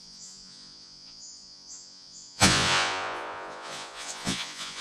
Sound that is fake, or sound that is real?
fake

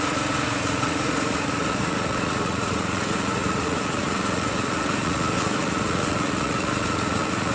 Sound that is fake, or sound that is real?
fake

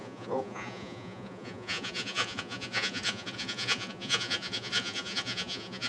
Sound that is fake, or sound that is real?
fake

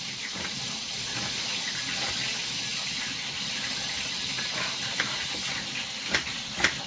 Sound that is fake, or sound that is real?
real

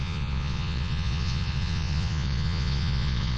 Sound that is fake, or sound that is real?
fake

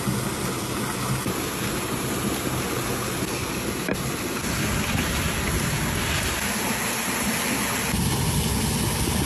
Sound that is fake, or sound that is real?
real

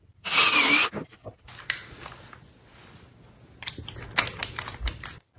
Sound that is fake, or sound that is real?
real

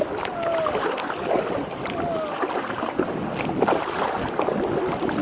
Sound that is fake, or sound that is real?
real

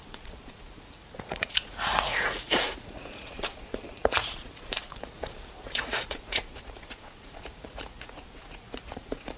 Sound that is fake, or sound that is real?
fake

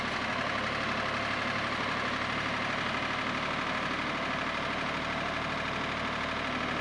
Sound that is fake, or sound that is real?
real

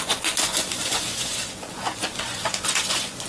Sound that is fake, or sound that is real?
fake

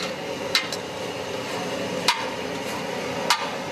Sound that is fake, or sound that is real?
real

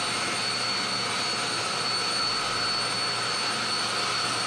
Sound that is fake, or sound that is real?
real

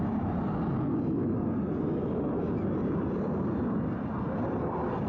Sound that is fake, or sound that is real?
real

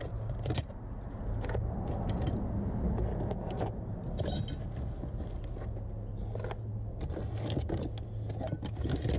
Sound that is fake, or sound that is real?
real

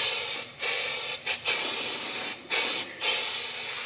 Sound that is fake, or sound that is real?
real